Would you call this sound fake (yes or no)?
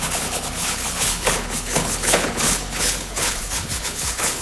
yes